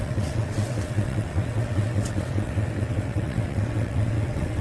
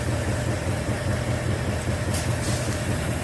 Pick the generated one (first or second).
first